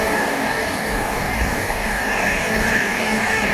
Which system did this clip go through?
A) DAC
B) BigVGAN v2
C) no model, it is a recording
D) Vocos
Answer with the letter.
A